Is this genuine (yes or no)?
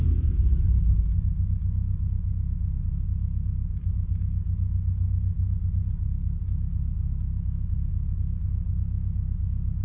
yes